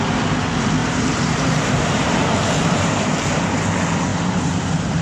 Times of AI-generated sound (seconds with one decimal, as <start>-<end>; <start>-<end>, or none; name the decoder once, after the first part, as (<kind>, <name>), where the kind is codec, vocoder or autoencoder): 0.8-3.4 (vocoder, BigVGAN v2); 4.1-5.0